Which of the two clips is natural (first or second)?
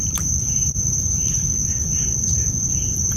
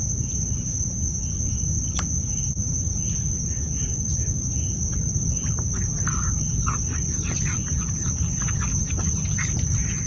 second